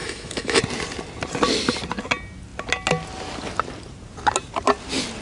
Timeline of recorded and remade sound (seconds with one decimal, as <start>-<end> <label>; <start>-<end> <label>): 0.0-0.6 remade; 0.6-5.2 recorded